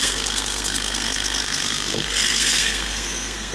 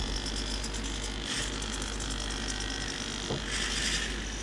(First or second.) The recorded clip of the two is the second